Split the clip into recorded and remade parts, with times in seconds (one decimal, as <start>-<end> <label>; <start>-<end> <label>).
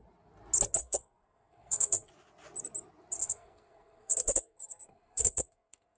0.0-0.8 recorded; 0.8-2.1 remade; 2.1-3.2 recorded; 3.2-6.0 remade